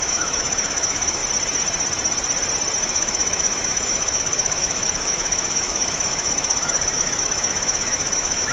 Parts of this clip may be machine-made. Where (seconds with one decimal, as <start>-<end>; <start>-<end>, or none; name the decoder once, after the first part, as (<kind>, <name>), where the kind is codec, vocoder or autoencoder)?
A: 0.0-1.2 (autoencoder, DAC-VAE); 2.8-8.5